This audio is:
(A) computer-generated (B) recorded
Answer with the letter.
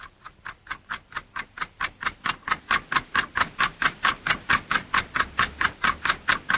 B